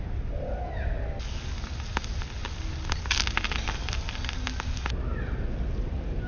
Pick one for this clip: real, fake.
real